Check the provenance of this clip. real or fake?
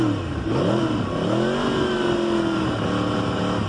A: real